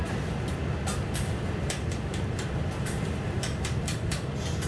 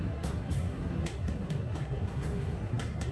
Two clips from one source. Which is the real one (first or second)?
first